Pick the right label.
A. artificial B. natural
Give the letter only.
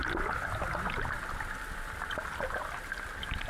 B